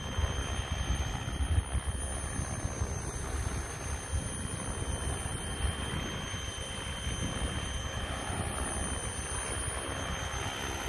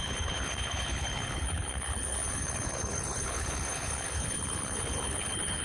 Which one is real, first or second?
first